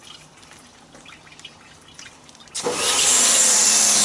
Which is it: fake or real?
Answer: fake